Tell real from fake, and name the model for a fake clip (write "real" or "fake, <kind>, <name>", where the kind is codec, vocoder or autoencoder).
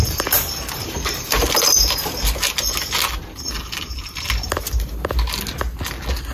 real